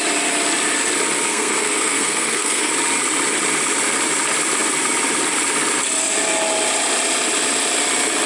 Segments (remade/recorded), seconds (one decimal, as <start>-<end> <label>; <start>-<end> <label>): 0.0-1.3 recorded; 1.3-2.7 remade; 2.7-8.3 recorded